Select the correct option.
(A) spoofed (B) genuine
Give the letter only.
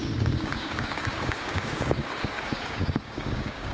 A